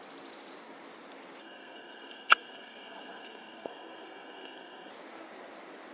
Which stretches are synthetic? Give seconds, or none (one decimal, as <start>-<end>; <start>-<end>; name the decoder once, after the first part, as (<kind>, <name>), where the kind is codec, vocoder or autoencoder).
1.4-4.9 (codec, SNAC)